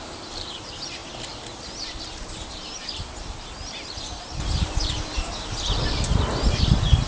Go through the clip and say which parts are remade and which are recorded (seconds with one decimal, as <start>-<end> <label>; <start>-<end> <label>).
0.0-7.1 remade